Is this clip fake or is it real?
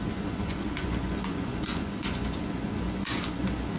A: fake